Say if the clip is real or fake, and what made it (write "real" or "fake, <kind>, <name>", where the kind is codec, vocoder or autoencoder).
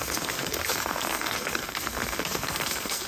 fake, codec, SNAC